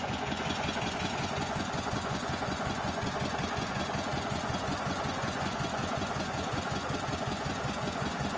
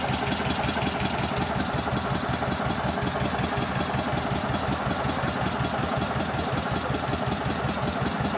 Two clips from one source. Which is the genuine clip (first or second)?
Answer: second